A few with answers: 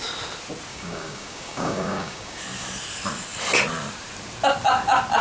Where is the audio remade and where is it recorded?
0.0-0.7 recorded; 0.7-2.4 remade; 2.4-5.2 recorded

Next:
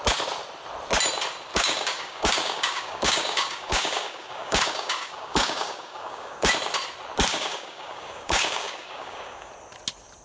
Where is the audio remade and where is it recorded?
0.0-1.5 recorded; 1.5-6.5 remade; 6.5-7.3 recorded; 7.3-9.5 remade; 9.5-10.2 recorded

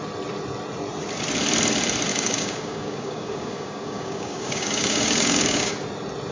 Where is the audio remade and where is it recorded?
0.0-2.1 recorded; 2.1-5.7 remade; 5.7-6.3 recorded

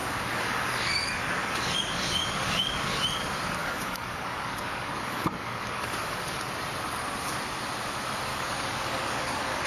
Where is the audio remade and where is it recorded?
0.0-2.8 remade; 2.8-3.6 recorded; 3.6-6.5 remade; 6.5-8.3 recorded; 8.3-9.7 remade

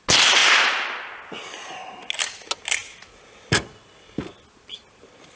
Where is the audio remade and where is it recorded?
0.0-5.4 recorded

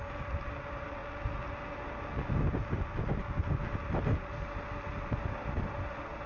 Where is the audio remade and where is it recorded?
0.0-6.3 recorded

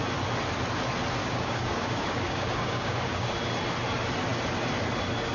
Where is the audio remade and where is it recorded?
0.0-1.2 recorded; 1.2-3.3 remade; 3.3-5.3 recorded